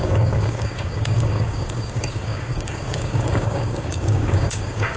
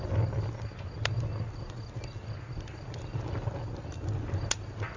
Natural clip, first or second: second